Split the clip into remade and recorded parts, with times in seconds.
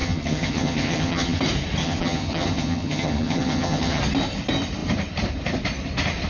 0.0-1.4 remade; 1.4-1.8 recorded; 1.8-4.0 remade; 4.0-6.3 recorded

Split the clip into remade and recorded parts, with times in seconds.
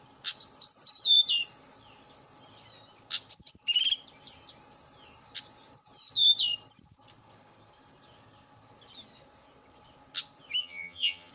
0.0-10.6 recorded; 10.6-11.3 remade